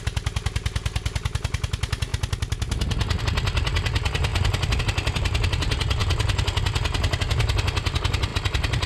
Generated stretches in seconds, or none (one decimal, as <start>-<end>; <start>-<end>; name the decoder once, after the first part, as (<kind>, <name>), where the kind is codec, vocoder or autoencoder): none

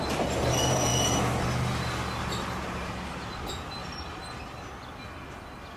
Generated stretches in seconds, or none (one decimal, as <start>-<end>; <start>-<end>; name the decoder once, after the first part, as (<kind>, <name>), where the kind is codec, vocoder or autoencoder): none

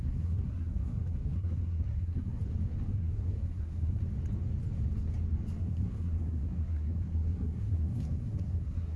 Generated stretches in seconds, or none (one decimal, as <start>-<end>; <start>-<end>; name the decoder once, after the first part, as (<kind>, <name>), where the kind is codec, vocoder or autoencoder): 0.0-2.4 (codec, SNAC); 2.9-4.0; 5.6-9.0